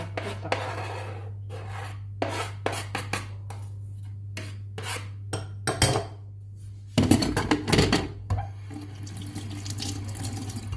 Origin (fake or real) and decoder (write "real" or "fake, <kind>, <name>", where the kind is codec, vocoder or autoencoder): real